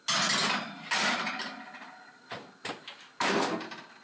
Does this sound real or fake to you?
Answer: real